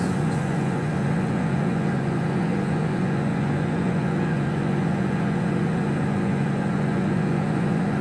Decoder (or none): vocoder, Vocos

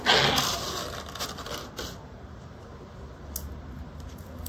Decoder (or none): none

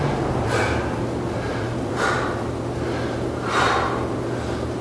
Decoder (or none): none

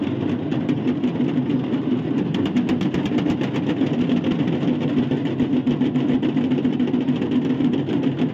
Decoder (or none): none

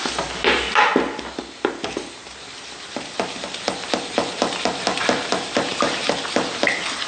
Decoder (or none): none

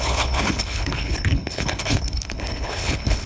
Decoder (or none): codec, HILCodec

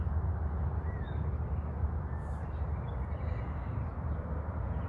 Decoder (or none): none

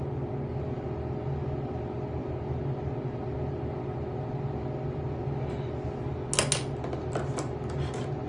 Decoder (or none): none